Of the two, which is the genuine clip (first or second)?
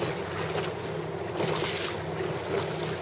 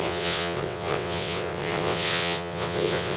first